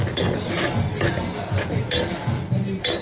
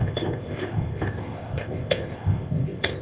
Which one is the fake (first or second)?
second